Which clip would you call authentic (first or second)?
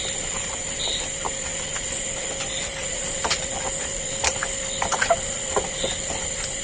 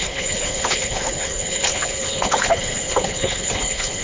first